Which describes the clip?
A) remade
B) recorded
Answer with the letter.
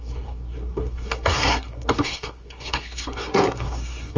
A